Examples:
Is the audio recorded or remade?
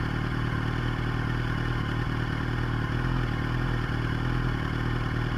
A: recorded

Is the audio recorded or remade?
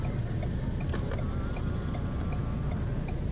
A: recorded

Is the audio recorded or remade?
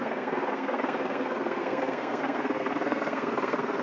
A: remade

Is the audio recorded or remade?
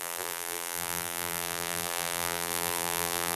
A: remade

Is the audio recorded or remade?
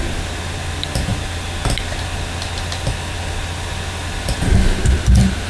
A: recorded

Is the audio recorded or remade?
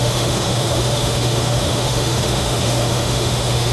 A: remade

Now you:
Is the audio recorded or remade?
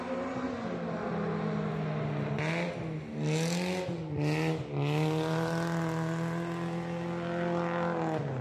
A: recorded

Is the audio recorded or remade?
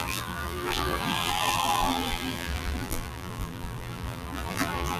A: remade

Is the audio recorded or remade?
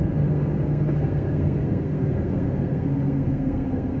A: remade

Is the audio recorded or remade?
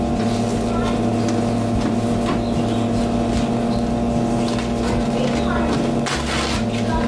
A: recorded